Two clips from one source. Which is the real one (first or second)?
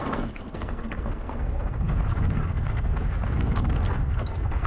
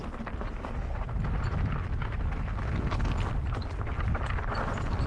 second